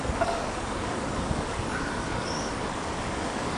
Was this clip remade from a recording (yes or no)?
yes